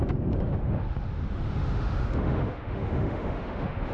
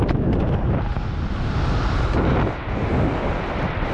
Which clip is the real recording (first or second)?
second